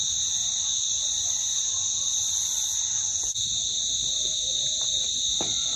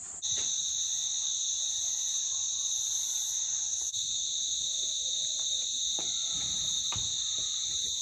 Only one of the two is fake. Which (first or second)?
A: second